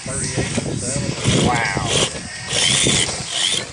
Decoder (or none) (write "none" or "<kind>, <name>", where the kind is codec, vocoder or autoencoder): none